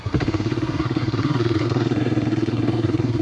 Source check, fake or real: fake